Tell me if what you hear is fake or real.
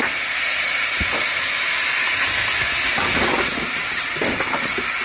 real